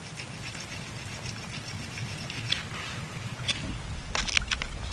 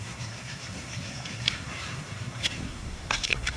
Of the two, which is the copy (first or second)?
second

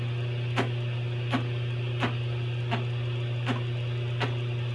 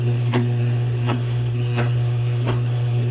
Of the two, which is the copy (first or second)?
second